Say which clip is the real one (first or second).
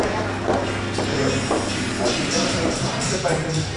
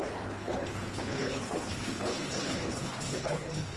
first